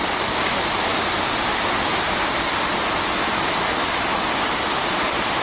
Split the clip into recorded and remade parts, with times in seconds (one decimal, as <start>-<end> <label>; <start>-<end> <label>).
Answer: 0.0-5.4 remade